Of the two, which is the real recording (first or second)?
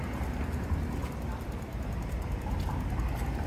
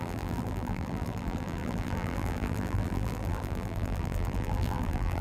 first